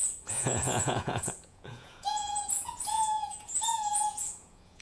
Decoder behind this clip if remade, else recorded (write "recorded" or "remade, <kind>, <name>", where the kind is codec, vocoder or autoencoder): remade, vocoder, Vocos